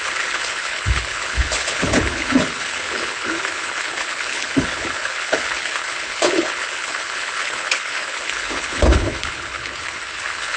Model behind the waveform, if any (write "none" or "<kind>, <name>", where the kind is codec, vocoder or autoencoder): codec, HILCodec